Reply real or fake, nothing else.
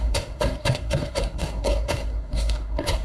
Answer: fake